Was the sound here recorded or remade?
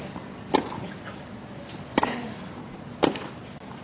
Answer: remade